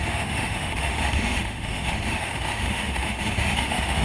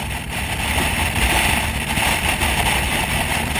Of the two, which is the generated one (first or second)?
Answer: first